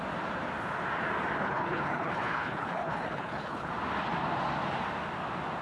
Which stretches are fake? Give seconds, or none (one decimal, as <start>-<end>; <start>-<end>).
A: 1.4-3.7